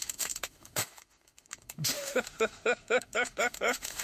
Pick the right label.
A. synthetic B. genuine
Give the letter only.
A